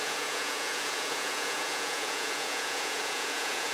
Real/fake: fake